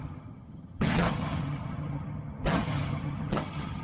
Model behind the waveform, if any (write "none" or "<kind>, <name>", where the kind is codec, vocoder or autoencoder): vocoder, HiFi-GAN